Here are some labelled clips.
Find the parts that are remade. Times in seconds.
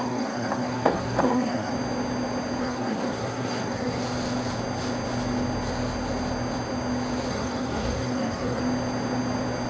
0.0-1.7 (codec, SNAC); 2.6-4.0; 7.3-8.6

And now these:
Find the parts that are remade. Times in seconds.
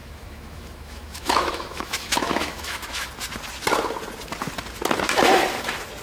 0.0-3.1 (autoencoder, DAC-VAE)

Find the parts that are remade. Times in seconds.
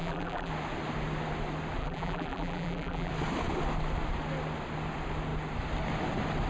0.0-0.5 (vocoder, BigVGAN v2); 1.8-3.1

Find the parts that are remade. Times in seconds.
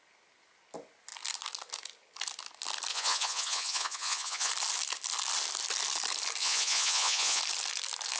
2.9-4.5 (vocoder, Vocos); 6.4-7.4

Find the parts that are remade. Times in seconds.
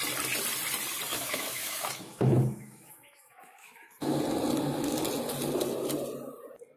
1.1-4.2 (autoencoder, DAC-VAE)